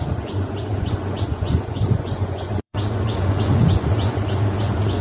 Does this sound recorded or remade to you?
remade